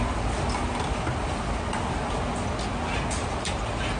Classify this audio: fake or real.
real